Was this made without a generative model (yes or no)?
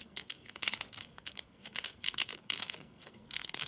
no